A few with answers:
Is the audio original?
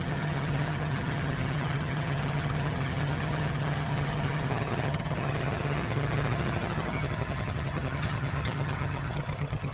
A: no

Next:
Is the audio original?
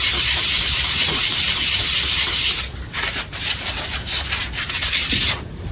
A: no